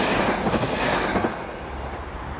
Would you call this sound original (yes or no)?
yes